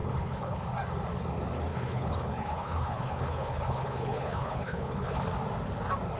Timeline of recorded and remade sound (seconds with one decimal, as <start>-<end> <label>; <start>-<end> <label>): 0.0-0.6 remade; 0.6-1.7 recorded; 1.7-5.2 remade; 5.2-6.2 recorded